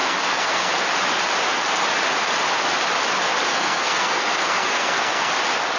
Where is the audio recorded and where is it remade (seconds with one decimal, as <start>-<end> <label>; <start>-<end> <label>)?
0.0-0.7 remade; 0.7-3.5 recorded; 3.5-5.3 remade; 5.3-5.8 recorded